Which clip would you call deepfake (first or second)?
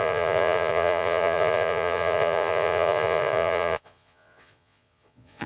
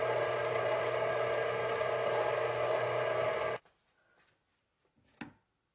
first